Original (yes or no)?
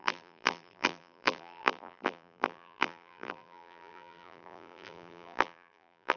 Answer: no